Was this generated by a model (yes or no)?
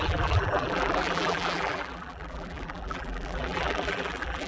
yes